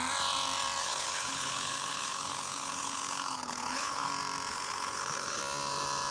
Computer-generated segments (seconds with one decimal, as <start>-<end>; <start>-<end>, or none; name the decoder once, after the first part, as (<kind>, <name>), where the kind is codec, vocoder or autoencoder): 0.8-4.1 (codec, HILCodec); 4.5-5.4